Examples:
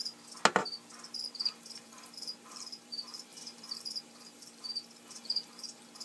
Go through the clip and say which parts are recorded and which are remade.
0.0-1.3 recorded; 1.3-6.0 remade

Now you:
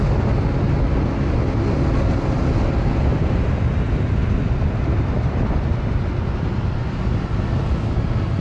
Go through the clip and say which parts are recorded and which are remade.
0.0-8.4 recorded

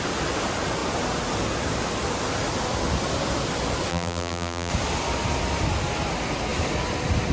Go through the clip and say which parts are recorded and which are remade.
0.0-3.9 recorded; 3.9-4.7 remade; 4.7-7.3 recorded